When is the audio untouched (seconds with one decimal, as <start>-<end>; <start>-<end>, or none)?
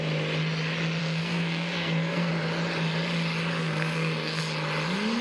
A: 0.0-1.0; 2.3-3.6; 4.4-5.2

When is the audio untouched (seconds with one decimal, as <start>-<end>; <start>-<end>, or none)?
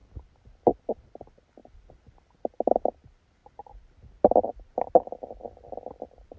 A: 0.8-1.6; 2.8-3.4; 4.9-6.4